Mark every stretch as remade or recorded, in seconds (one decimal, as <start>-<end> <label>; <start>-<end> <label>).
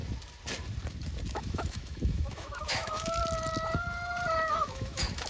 0.0-1.3 recorded; 1.3-3.2 remade; 3.2-4.5 recorded; 4.5-5.3 remade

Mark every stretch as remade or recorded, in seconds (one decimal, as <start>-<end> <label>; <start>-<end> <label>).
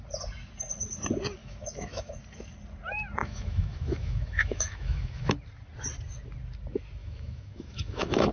0.0-1.4 recorded; 1.4-2.2 remade; 2.2-3.2 recorded; 3.2-5.3 remade; 5.3-7.0 recorded; 7.0-8.3 remade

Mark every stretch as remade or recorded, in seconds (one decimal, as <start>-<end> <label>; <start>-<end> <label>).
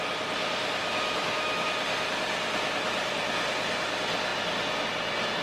0.0-0.8 recorded; 0.8-1.7 remade; 1.7-5.4 recorded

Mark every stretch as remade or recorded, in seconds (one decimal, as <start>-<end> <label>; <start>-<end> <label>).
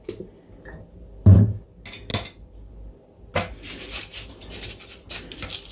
0.0-5.7 recorded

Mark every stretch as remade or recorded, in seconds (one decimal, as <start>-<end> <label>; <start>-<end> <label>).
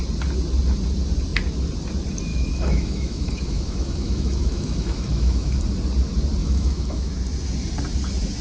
0.0-2.3 recorded; 2.3-5.6 remade; 5.6-6.4 recorded; 6.4-7.1 remade; 7.1-8.4 recorded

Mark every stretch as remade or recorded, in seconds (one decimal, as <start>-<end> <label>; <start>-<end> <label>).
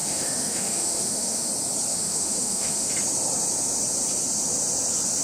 0.0-1.5 remade; 1.5-1.9 recorded; 1.9-2.9 remade; 2.9-5.2 recorded